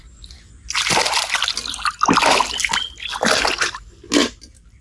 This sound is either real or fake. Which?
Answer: real